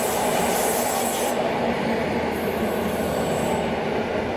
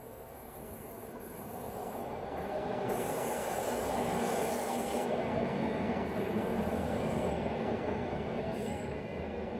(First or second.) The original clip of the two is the first